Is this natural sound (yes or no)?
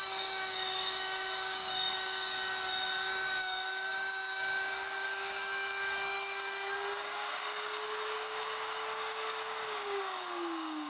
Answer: no